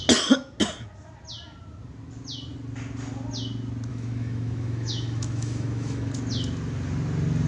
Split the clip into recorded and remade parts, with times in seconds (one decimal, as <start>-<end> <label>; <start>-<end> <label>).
0.0-3.9 recorded; 3.9-6.1 remade; 6.1-7.5 recorded